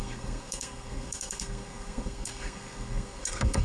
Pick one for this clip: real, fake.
fake